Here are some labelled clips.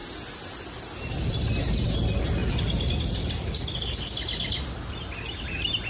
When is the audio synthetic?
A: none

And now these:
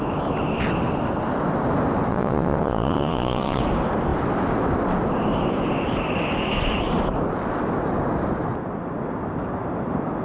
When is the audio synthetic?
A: 2.1-3.6 (vocoder, Vocos)

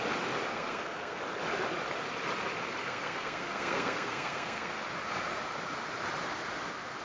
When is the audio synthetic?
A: 0.5-1.2 (codec, SNAC); 2.8-4.8